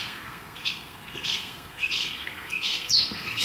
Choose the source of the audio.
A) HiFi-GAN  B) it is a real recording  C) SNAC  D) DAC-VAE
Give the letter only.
C